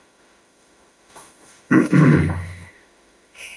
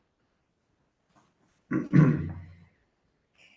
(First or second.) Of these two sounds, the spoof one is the first